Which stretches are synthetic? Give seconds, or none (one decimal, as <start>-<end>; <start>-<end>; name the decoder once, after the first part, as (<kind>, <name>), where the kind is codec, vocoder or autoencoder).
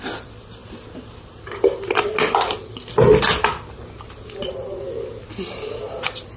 none